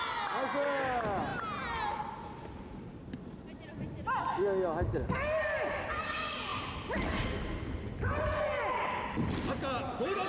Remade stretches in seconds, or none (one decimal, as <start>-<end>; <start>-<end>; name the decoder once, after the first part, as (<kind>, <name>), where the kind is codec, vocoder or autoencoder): none